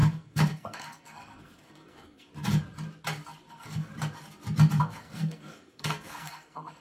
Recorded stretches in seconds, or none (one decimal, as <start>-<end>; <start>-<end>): 2.3-3.5; 3.9-4.8